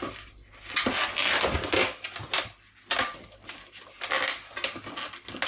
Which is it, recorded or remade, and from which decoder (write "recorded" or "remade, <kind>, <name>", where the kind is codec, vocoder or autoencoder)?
recorded